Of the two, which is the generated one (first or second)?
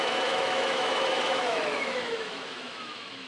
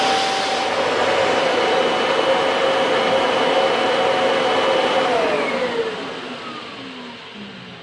first